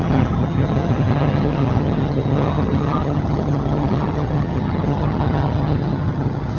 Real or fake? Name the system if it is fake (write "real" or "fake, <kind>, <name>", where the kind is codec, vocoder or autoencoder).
fake, vocoder, HiFi-GAN